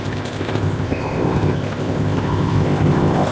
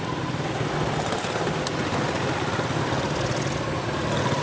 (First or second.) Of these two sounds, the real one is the second